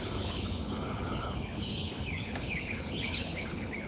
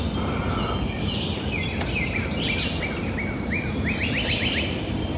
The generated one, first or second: first